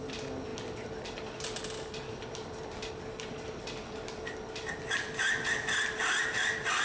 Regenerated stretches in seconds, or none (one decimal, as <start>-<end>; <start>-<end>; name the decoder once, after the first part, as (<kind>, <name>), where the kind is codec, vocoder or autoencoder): none